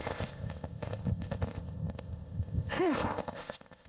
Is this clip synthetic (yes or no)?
yes